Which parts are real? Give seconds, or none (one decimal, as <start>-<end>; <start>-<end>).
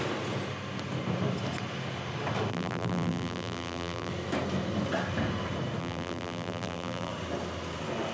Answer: 0.0-2.5; 4.1-5.8; 7.1-8.1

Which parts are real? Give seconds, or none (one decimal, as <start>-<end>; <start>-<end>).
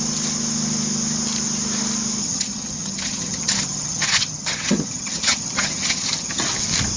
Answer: 0.0-2.2; 6.4-7.0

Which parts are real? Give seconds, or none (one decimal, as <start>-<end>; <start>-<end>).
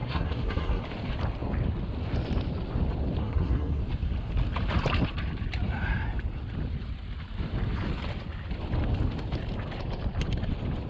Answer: 0.8-3.2; 3.8-10.9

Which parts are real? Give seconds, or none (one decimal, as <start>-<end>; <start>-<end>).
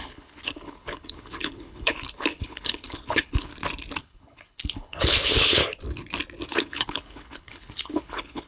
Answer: 3.5-4.0; 5.6-6.5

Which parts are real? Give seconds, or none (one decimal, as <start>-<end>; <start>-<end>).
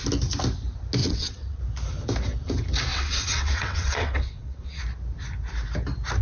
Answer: 0.0-1.0; 1.6-2.9; 4.8-6.2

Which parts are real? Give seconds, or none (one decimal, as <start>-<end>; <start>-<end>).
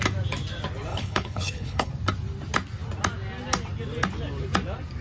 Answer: 0.0-0.9; 1.9-5.0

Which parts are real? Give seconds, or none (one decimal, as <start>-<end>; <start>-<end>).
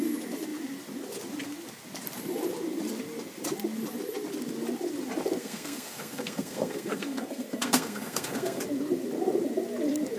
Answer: 0.0-5.4; 8.6-10.2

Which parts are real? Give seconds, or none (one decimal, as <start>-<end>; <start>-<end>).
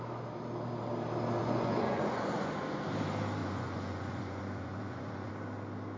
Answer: 0.0-1.4; 2.5-3.4; 5.3-6.0